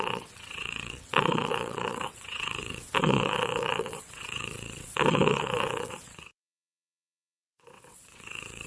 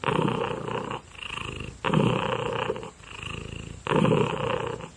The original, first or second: second